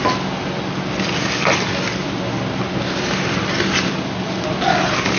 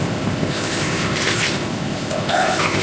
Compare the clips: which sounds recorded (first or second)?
first